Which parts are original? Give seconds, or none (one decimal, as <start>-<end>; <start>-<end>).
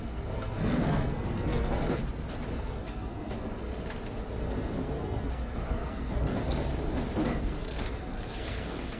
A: 2.0-2.5; 3.7-4.4; 6.7-7.4